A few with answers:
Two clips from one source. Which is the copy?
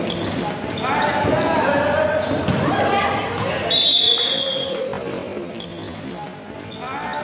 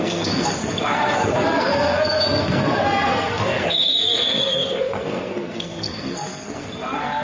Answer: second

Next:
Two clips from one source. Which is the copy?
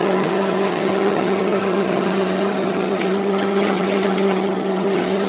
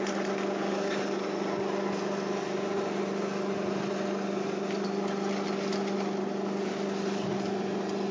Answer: first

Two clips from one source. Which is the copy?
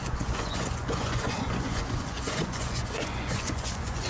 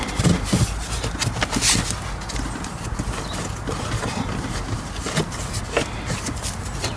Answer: first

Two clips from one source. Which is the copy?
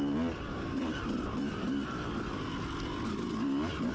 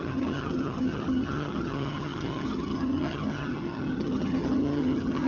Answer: second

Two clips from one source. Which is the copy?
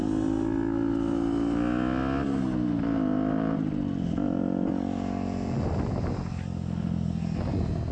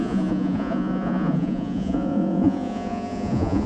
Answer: second